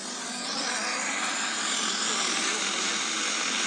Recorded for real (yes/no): yes